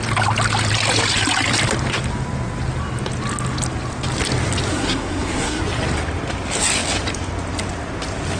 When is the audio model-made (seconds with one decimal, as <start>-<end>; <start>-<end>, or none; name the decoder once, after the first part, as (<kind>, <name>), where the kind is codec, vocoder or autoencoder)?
4.7-5.6 (codec, SNAC)